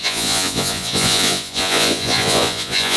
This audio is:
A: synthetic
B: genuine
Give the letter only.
A